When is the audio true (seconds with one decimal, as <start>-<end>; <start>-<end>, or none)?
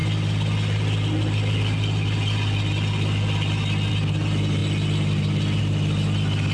0.0-6.5